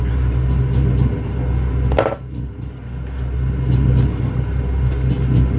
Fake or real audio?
real